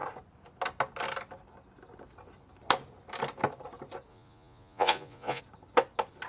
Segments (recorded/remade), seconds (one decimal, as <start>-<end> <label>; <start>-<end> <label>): 0.0-4.1 recorded; 4.1-5.4 remade; 5.4-6.3 recorded